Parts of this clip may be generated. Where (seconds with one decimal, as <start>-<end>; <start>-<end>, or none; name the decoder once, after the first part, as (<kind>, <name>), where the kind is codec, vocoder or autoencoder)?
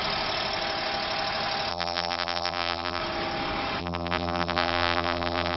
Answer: 1.7-3.0 (vocoder, BigVGAN v2); 3.8-5.6